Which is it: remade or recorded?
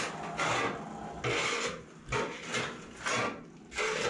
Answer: recorded